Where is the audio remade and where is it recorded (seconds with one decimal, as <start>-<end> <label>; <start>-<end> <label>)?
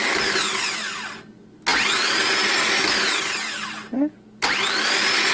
0.0-5.3 recorded